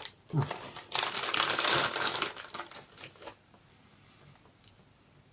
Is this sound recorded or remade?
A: recorded